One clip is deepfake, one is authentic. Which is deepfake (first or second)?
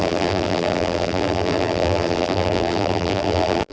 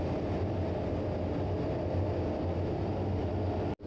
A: first